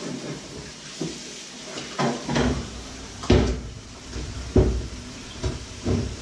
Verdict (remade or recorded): remade